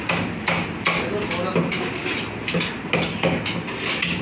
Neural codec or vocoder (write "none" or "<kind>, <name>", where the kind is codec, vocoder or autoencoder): none